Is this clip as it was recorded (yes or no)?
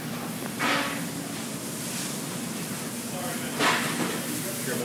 yes